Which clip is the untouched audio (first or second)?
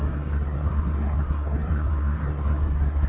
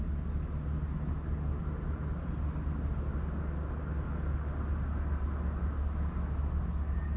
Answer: second